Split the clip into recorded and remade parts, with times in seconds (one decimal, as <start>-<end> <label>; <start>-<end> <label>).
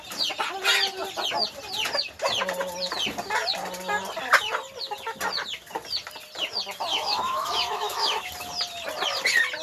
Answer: 0.0-6.9 recorded; 6.9-8.3 remade; 8.3-9.6 recorded